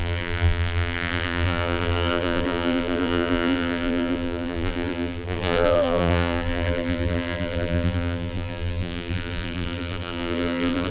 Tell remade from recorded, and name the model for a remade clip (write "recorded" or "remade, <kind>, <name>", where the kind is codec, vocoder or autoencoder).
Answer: remade, vocoder, BigVGAN v2